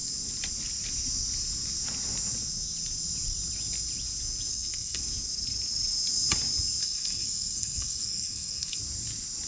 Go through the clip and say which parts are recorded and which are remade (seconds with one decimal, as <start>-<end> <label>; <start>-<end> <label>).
0.0-4.5 recorded; 4.5-5.0 remade; 5.0-6.8 recorded; 6.8-8.8 remade; 8.8-9.5 recorded